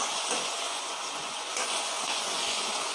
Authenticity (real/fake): fake